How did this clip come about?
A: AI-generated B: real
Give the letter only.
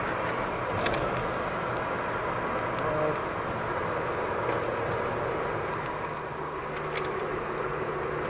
B